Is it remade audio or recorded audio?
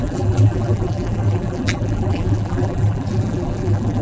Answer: remade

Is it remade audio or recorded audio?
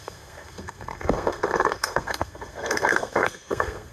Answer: remade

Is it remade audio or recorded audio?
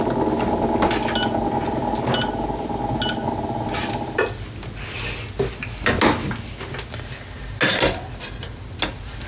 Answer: recorded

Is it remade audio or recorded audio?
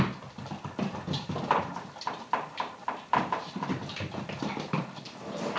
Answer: recorded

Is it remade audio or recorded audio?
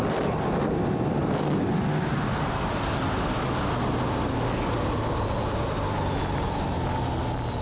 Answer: recorded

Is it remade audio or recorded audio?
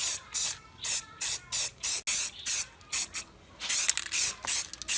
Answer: recorded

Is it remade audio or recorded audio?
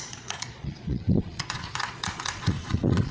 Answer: remade